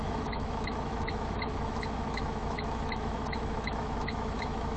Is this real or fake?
fake